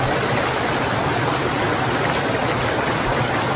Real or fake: real